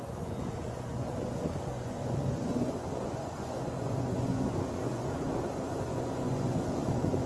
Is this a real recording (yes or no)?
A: no